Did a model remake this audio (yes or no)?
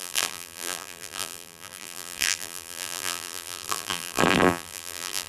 yes